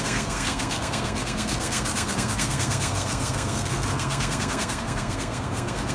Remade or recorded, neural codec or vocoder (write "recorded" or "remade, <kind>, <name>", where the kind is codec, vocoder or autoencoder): remade, codec, SNAC